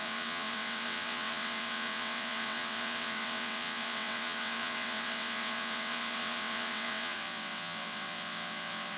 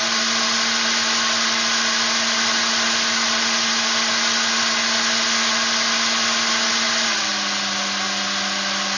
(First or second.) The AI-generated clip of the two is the first